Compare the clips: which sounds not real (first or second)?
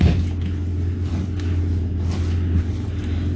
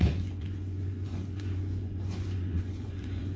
second